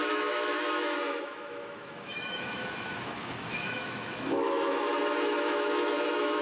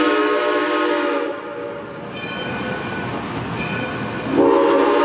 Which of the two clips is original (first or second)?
second